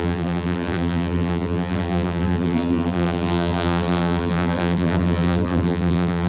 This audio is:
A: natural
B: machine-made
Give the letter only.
B